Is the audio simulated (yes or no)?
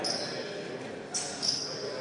no